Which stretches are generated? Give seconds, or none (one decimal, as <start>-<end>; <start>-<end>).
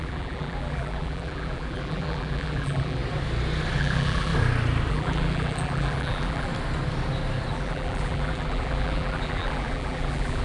0.0-3.0; 3.8-4.3; 4.9-6.5; 7.5-10.4